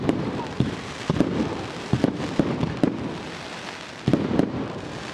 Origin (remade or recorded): remade